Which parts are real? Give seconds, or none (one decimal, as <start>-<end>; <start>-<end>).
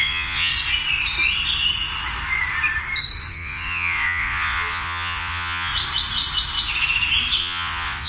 0.5-3.3; 5.7-7.4